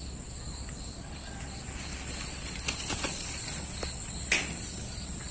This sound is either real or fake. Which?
real